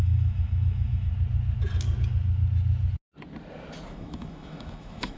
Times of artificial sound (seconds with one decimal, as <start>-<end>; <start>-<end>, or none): 0.0-1.1; 3.9-5.2